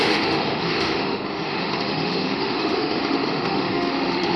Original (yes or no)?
no